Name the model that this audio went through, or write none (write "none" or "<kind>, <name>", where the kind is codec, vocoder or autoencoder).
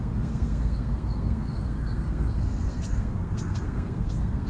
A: codec, SNAC